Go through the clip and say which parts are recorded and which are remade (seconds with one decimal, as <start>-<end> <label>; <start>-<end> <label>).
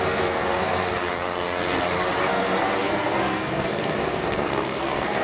0.0-0.9 remade; 0.9-2.2 recorded; 2.2-5.2 remade